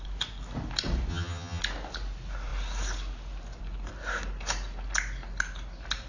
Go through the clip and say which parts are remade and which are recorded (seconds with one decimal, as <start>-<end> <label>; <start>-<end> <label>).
0.0-1.1 recorded; 1.1-1.6 remade; 1.6-6.1 recorded